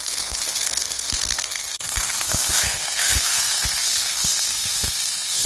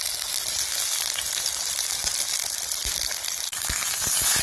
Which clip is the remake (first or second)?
first